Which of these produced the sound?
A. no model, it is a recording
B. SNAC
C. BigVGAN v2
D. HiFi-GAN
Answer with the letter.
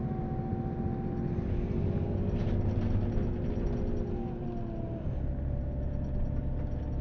A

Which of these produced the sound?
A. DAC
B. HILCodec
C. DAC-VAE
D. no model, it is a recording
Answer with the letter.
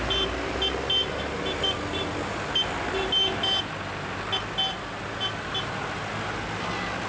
D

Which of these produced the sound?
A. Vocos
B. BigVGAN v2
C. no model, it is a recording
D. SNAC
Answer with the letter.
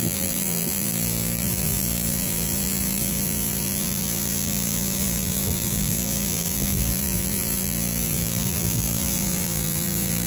B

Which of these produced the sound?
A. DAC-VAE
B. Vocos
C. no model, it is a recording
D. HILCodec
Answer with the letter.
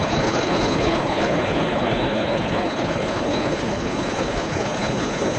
D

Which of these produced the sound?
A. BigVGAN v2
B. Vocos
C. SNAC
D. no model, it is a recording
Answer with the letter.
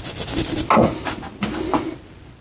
D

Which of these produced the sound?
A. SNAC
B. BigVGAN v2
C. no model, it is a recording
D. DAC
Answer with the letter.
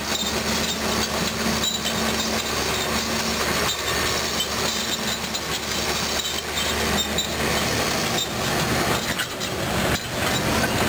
C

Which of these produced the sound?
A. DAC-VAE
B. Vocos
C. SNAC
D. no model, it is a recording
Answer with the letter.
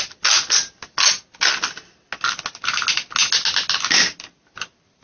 D